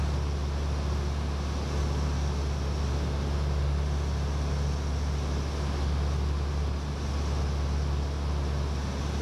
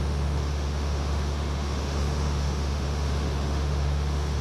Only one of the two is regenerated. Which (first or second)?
second